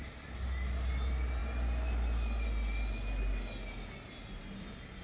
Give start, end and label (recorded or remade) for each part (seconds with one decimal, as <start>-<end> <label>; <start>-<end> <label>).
0.0-5.0 recorded